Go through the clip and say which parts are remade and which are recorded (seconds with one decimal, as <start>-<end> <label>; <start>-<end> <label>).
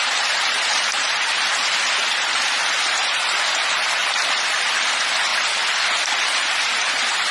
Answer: 0.0-5.3 remade; 5.3-6.2 recorded; 6.2-7.3 remade